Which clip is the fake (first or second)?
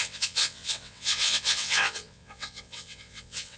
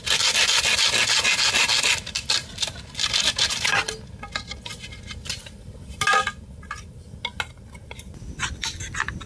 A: first